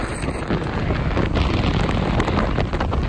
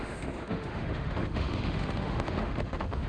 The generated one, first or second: second